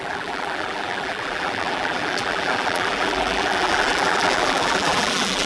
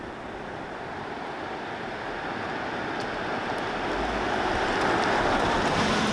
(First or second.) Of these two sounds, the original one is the second